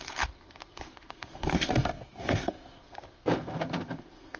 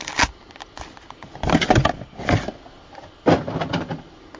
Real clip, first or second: second